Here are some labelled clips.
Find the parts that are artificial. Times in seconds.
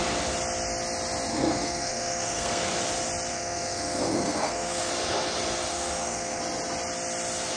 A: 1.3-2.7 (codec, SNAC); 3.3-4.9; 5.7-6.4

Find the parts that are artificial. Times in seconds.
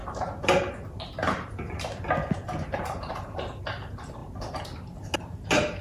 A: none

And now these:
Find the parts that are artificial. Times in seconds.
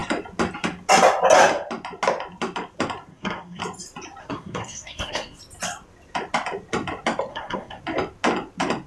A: 3.1-3.6 (codec, SNAC); 4.2-5.4; 7.3-7.8